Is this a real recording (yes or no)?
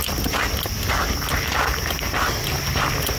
yes